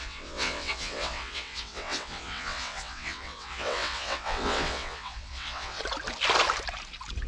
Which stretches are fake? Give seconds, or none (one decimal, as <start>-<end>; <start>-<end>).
0.0-5.8